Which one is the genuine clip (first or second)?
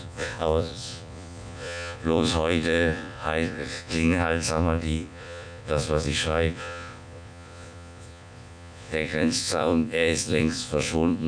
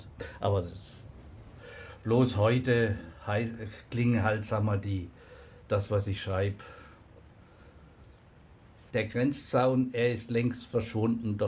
second